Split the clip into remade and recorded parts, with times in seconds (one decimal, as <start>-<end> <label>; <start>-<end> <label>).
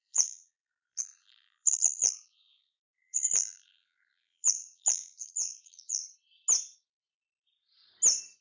0.0-6.0 remade; 6.0-8.4 recorded